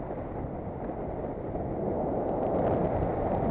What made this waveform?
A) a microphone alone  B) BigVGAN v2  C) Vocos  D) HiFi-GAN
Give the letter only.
A